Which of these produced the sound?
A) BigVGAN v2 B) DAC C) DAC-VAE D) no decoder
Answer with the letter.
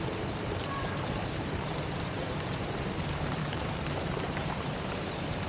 A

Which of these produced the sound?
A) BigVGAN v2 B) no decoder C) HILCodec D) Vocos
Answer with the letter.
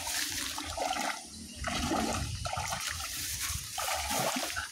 A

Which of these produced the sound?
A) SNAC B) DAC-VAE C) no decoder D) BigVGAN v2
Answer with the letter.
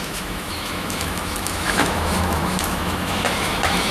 B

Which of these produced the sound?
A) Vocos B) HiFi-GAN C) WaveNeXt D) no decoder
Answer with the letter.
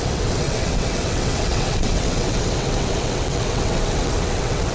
C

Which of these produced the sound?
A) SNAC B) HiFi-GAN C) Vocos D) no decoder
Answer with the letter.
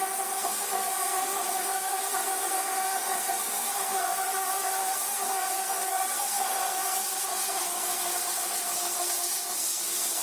A